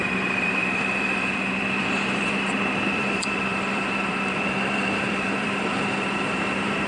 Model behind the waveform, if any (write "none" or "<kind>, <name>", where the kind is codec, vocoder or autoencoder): vocoder, BigVGAN v2